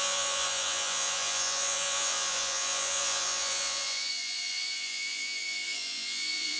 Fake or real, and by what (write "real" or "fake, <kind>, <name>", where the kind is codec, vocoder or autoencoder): fake, vocoder, Vocos